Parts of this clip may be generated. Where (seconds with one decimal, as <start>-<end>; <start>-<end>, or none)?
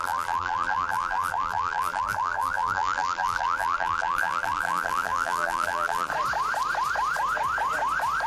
0.0-6.1